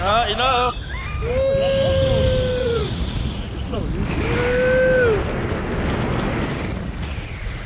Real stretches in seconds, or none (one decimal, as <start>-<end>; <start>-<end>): 0.0-2.6; 3.8-6.7